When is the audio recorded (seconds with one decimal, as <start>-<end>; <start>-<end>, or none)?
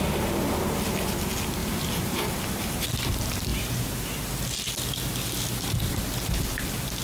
0.0-1.6; 2.8-3.5; 4.3-7.0